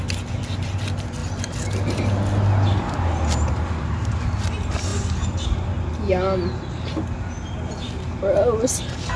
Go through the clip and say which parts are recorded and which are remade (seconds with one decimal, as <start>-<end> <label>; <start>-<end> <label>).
0.0-9.2 recorded